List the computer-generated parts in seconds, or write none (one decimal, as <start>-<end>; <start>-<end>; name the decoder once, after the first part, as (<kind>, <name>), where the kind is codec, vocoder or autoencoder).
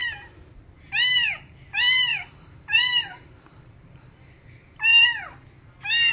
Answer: 0.0-4.9 (vocoder, BigVGAN v2)